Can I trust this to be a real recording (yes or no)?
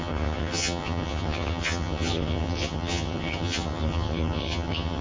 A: no